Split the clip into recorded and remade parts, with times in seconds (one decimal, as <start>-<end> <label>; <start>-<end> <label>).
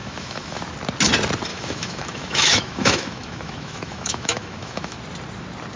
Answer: 0.0-0.6 remade; 0.6-1.5 recorded; 1.5-5.0 remade; 5.0-5.8 recorded